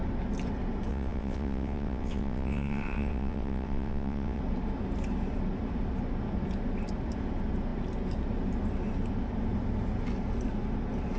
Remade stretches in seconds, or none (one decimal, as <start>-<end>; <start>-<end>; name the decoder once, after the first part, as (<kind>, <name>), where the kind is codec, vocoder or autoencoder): 0.9-4.4 (vocoder, WaveNeXt)